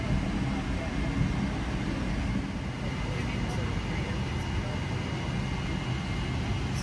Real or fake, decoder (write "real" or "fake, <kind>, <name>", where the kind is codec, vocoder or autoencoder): real